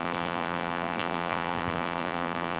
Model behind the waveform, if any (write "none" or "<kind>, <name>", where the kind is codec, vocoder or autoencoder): vocoder, BigVGAN v2